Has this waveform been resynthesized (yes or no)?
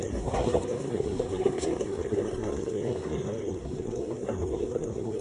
yes